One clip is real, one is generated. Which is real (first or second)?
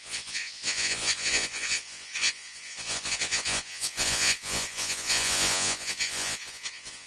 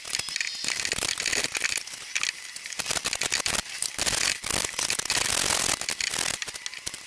second